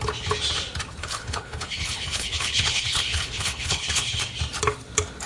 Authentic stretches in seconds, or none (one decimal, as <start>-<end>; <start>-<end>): 0.0-1.0; 4.2-5.3